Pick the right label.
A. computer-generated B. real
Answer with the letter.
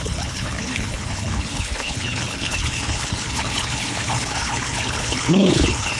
A